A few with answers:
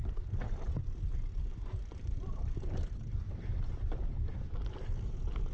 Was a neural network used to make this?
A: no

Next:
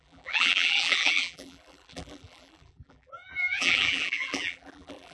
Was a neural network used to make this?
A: yes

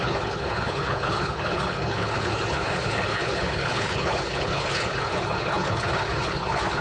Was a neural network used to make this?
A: yes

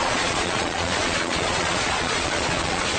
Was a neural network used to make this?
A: yes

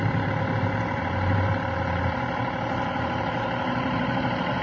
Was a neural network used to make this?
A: yes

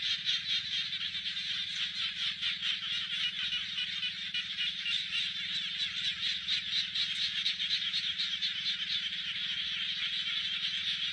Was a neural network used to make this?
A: no